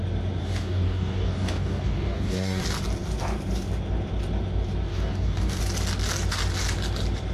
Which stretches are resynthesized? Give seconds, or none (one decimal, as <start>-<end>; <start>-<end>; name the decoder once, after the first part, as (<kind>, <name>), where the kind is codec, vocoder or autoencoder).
0.4-2.6 (codec, DAC); 4.9-5.6

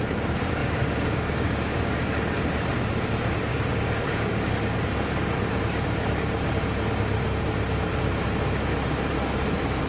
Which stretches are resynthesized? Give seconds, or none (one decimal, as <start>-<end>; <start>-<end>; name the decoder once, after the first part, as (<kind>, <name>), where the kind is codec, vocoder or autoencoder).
0.6-2.1 (codec, DAC); 3.5-4.5

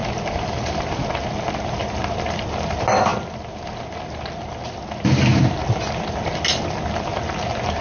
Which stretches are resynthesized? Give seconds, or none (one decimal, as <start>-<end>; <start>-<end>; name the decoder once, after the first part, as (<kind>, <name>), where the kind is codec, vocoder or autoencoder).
none

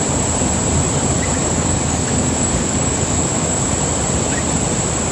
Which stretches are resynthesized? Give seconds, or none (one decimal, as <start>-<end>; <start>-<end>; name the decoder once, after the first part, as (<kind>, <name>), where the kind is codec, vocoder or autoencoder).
1.4-3.8 (codec, DAC)

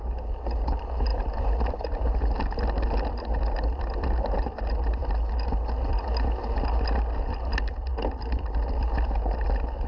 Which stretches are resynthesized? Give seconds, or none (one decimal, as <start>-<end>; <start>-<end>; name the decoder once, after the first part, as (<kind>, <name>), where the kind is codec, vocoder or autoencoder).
none